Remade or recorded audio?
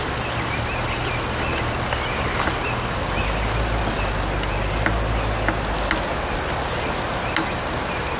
recorded